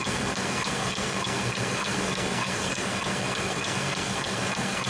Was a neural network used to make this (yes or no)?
yes